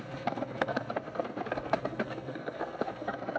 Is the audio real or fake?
fake